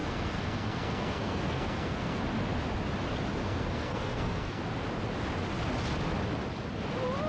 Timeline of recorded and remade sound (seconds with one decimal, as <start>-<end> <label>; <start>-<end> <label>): 0.0-2.2 remade; 2.2-3.4 recorded; 3.4-4.6 remade; 4.6-7.3 recorded